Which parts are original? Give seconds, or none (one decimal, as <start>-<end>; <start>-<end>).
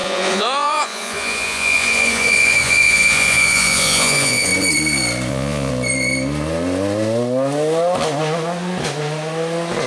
4.5-5.3; 5.7-9.9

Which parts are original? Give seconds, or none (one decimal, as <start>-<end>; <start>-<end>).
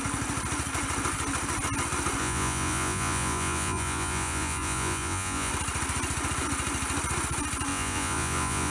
0.0-2.2; 5.5-7.7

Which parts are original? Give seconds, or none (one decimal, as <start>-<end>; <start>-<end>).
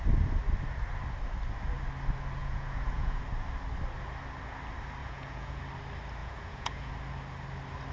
0.0-2.4; 3.2-5.0; 5.6-6.2; 6.9-7.9